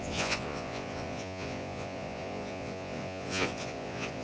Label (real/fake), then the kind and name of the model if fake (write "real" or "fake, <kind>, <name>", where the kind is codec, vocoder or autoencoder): fake, vocoder, Vocos